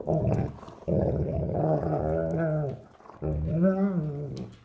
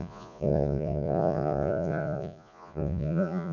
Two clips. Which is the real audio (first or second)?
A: first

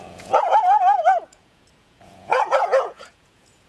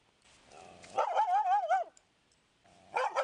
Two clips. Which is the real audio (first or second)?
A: second